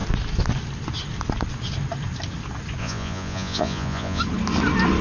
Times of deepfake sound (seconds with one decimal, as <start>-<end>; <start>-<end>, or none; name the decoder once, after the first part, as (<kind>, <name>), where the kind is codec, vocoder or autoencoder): 2.8-4.2 (vocoder, Vocos)